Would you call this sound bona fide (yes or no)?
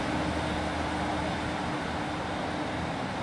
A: yes